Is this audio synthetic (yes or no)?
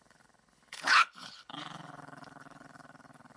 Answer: yes